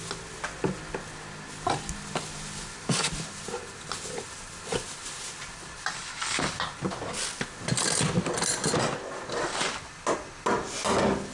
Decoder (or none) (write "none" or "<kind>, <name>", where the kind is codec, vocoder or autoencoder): none